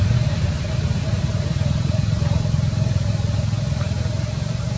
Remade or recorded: recorded